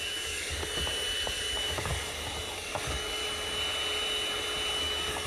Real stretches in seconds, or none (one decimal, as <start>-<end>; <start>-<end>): 0.6-1.5; 1.9-2.5; 3.2-4.7